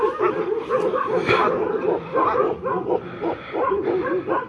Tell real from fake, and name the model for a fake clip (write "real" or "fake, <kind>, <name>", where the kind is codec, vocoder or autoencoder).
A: real